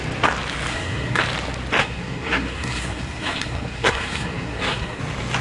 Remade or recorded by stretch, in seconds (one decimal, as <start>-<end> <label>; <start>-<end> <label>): 0.0-0.7 recorded; 0.7-1.2 remade; 1.2-1.8 recorded; 1.8-5.0 remade; 5.0-5.4 recorded